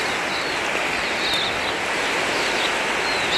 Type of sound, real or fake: real